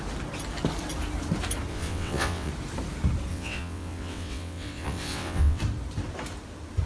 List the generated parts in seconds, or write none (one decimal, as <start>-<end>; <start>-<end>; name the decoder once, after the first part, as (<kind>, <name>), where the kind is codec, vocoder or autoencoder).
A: 1.7-2.5 (vocoder, WaveNeXt); 3.3-5.6